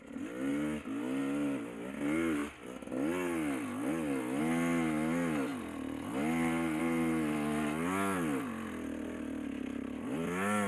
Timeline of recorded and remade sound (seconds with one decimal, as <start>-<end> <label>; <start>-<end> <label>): 0.0-10.7 recorded

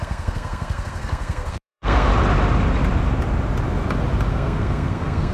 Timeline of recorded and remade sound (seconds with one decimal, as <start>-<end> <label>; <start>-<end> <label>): 0.0-2.1 remade; 2.1-4.3 recorded; 4.3-5.3 remade